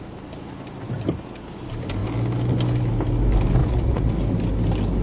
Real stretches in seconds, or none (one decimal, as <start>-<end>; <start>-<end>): 0.0-3.6; 4.1-5.0